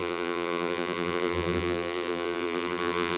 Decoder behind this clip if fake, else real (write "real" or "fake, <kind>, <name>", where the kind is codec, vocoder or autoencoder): fake, vocoder, BigVGAN v2